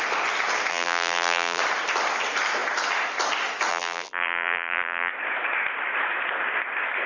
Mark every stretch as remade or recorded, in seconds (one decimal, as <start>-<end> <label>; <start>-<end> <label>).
0.0-0.7 recorded; 0.7-1.6 remade; 1.6-3.7 recorded; 3.7-5.1 remade; 5.1-7.1 recorded